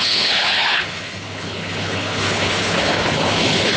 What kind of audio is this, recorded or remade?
remade